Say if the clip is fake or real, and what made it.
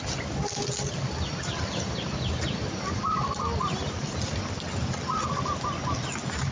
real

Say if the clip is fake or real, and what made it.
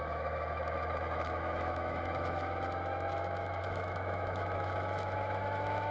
fake, autoencoder, DAC-VAE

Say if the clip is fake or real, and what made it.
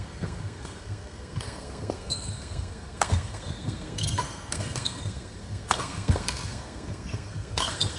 fake, codec, SNAC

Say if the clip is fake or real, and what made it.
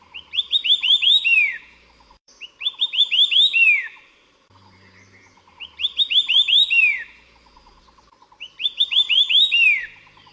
fake, vocoder, BigVGAN v2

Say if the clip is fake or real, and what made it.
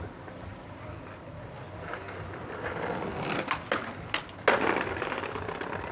real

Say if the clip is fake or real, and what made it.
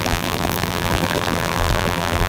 fake, vocoder, BigVGAN v2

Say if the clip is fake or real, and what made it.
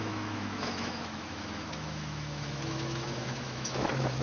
fake, autoencoder, DAC-VAE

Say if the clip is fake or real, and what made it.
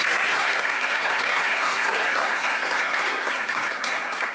fake, codec, SNAC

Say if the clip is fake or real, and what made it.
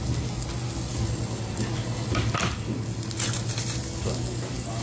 real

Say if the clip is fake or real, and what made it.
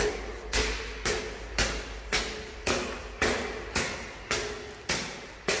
real